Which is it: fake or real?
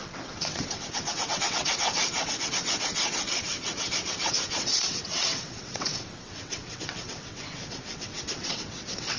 fake